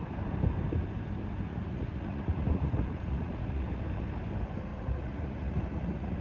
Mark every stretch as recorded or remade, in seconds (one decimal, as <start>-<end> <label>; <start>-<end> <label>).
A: 0.0-1.5 recorded; 1.5-3.8 remade; 3.8-4.7 recorded; 4.7-6.2 remade